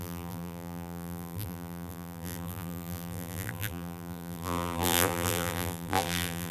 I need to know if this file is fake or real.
fake